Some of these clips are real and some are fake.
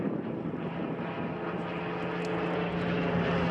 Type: real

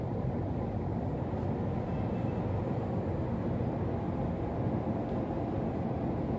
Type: real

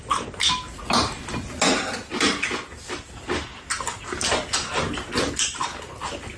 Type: real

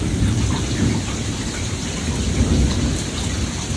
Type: real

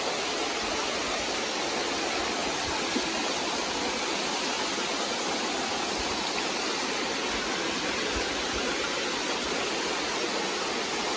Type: real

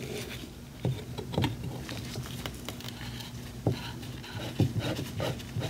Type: real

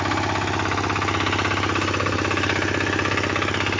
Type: real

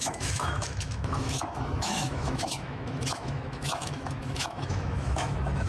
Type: fake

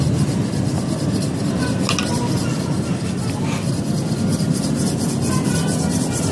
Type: real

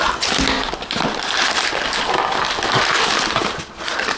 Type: real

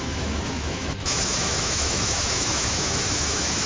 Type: fake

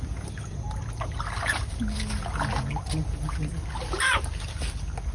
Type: real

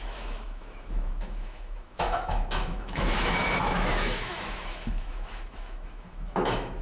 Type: fake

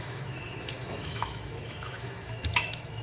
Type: fake